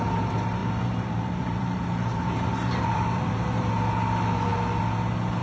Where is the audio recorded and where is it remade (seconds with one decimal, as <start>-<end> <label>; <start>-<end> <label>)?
0.0-0.6 recorded; 0.6-3.7 remade; 3.7-5.4 recorded